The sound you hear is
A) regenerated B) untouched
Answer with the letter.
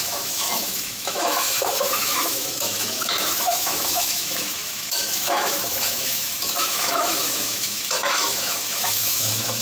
A